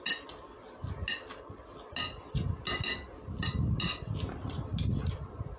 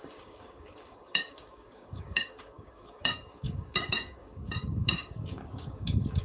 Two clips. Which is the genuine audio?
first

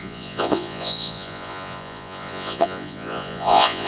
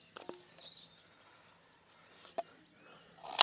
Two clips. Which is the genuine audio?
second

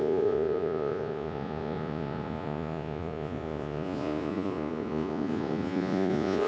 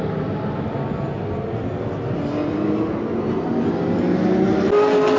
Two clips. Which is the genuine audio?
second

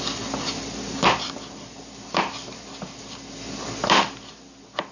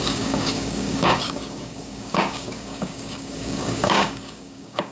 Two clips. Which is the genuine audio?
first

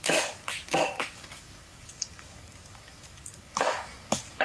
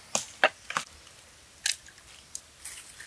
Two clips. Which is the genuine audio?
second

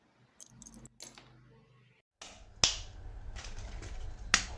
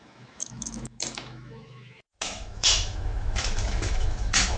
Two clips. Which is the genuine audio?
first